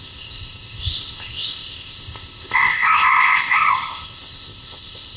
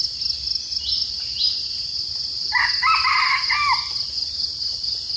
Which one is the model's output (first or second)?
first